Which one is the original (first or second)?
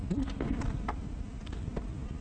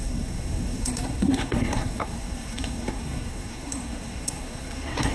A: first